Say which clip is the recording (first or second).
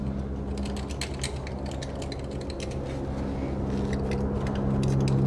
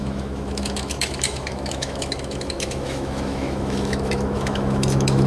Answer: first